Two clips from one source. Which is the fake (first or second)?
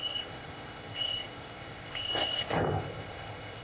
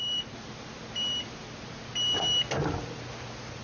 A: first